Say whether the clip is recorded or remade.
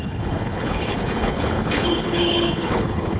remade